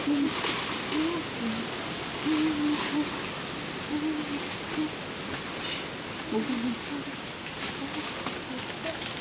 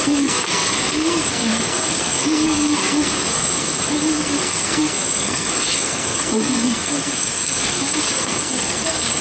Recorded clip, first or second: first